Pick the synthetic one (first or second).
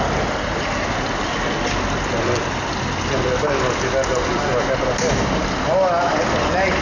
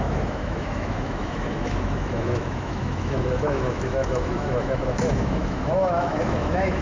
second